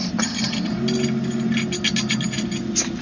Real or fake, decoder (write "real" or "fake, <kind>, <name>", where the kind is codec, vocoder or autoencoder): real